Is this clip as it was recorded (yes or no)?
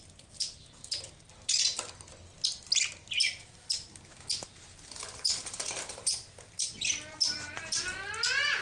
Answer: yes